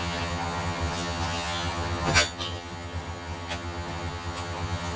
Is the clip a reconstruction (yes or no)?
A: yes